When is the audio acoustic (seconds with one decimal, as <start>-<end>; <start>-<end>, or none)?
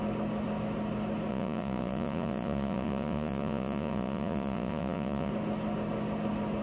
0.0-1.3; 5.3-6.6